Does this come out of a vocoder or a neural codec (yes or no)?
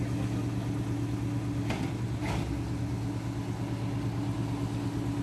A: no